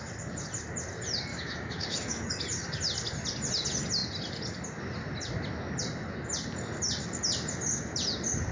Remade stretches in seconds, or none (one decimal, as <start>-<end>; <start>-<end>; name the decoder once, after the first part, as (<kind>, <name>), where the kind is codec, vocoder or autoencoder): 1.3-2.3 (autoencoder, DAC-VAE)